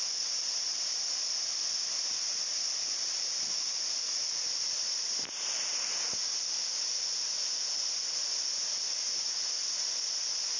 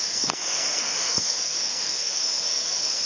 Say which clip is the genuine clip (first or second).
first